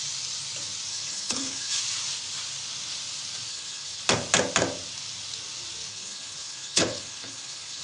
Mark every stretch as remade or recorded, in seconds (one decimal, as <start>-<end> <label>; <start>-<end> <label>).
0.0-0.9 recorded; 0.9-1.8 remade; 1.8-3.5 recorded; 3.5-4.0 remade; 4.0-5.9 recorded; 5.9-7.8 remade